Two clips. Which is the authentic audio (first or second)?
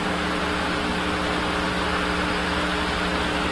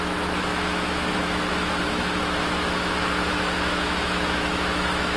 first